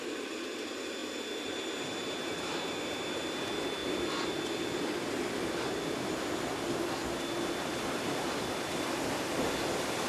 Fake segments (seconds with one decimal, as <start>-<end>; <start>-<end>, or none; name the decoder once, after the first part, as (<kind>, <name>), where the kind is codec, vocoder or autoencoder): none